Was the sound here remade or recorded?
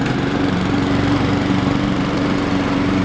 remade